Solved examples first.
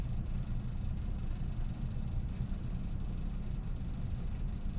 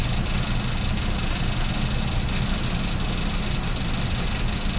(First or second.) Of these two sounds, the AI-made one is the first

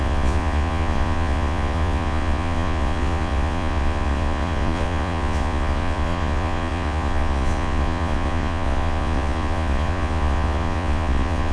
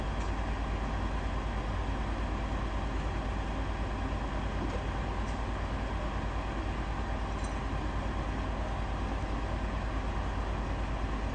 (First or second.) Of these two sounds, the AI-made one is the first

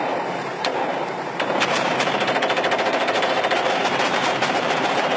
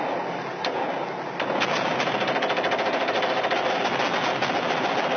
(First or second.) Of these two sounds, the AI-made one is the first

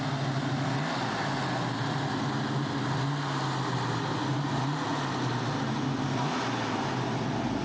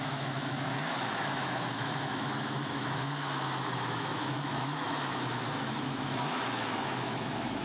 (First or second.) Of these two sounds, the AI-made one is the second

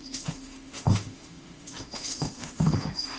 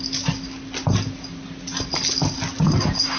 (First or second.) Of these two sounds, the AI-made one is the first